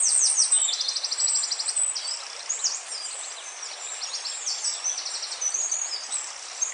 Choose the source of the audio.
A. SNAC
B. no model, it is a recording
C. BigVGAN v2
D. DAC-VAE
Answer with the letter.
B